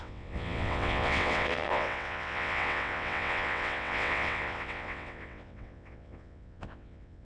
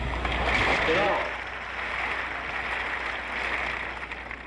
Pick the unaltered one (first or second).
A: second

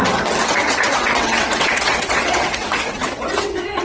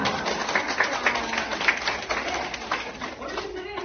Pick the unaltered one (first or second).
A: second